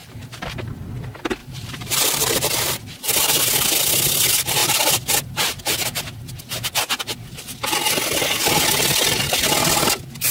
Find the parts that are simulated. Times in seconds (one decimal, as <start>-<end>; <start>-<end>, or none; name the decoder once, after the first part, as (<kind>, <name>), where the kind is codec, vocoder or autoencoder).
0.0-0.7 (vocoder, BigVGAN v2); 1.4-2.8

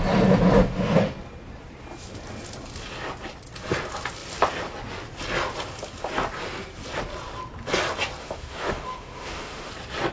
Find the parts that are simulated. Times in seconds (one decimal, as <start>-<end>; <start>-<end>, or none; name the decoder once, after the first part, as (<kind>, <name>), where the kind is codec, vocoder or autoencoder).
8.2-9.7 (autoencoder, DAC-VAE)

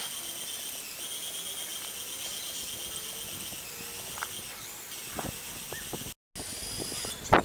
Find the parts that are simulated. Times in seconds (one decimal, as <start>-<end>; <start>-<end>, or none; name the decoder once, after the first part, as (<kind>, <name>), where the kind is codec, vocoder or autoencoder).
none

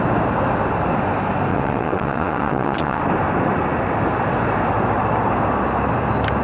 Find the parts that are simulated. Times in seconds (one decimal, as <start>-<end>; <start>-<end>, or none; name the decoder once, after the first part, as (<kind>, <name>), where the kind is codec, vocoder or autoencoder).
1.5-3.0 (vocoder, WaveNeXt)